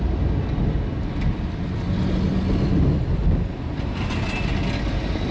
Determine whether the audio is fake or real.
real